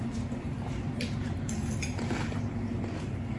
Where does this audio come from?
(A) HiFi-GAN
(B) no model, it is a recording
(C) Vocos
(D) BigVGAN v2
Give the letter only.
B